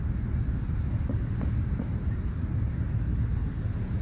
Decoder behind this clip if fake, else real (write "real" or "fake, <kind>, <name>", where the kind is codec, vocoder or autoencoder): real